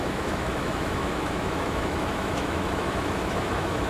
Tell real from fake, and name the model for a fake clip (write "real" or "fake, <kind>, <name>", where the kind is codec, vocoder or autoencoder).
fake, autoencoder, DAC-VAE